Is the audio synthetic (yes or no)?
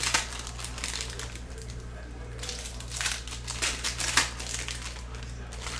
no